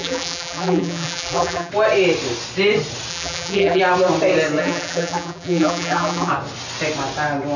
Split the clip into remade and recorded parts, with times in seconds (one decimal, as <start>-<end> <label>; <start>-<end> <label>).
0.0-1.7 remade; 1.7-3.1 recorded; 3.1-3.8 remade; 3.8-4.6 recorded; 4.6-6.3 remade; 6.3-7.6 recorded

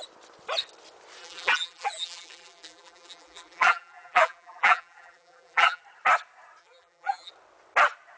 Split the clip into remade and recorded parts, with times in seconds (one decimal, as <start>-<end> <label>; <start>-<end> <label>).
0.0-1.2 recorded; 1.2-5.8 remade; 5.8-6.6 recorded; 6.6-7.3 remade; 7.3-8.2 recorded

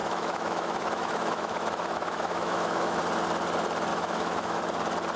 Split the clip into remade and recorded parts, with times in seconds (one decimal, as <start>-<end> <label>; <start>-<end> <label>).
0.0-3.0 remade; 3.0-3.9 recorded; 3.9-4.6 remade; 4.6-5.2 recorded

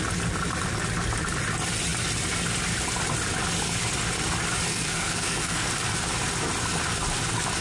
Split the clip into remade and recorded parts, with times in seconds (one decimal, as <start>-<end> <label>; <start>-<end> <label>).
0.0-4.7 recorded; 4.7-5.7 remade; 5.7-7.6 recorded

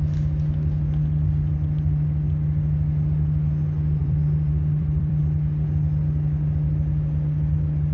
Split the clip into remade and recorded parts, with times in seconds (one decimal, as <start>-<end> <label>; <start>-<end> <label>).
0.0-4.0 recorded; 4.0-5.2 remade; 5.2-7.9 recorded

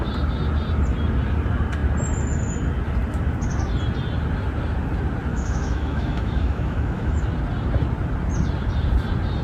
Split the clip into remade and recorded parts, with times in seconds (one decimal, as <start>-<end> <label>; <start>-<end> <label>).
0.0-5.3 recorded; 5.3-7.2 remade; 7.2-9.4 recorded

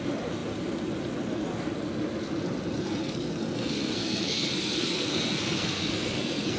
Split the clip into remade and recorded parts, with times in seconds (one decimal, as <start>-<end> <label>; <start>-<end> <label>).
0.0-3.0 recorded; 3.0-6.6 remade

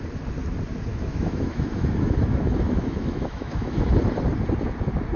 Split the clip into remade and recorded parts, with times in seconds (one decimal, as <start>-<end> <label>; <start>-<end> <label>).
0.0-0.9 recorded; 0.9-4.0 remade; 4.0-5.2 recorded